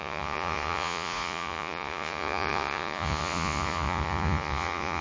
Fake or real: fake